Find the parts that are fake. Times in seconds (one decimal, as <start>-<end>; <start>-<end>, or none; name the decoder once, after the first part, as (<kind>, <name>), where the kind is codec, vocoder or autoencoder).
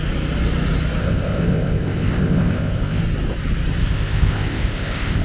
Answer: 1.0-3.0 (codec, ZipCodec); 3.8-5.2